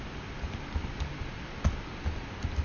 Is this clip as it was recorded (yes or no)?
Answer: yes